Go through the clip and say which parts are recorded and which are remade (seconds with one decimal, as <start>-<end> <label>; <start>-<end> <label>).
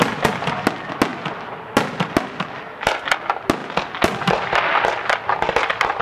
0.0-6.0 recorded